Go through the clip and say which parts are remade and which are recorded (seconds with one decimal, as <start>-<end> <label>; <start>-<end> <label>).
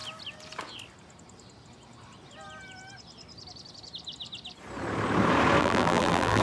0.0-5.6 recorded; 5.6-6.4 remade